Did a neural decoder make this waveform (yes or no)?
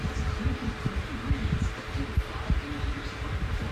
yes